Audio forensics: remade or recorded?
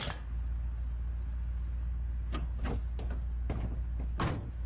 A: recorded